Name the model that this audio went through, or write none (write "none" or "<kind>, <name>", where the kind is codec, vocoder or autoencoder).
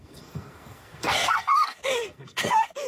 codec, SNAC